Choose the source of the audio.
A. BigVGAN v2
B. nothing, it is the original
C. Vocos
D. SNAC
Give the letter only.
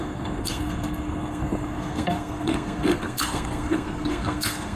D